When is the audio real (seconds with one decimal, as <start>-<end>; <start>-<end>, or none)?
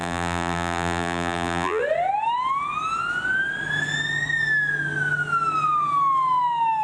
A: 1.8-6.8